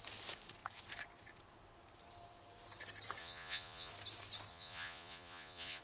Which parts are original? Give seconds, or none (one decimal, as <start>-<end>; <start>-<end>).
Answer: 0.0-3.2; 3.9-4.5